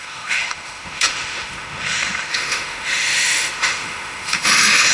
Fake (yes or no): yes